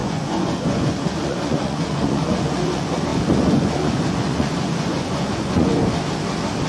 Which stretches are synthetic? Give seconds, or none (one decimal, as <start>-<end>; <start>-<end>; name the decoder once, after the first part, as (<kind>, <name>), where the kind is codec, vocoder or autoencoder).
0.0-5.8 (vocoder, Vocos)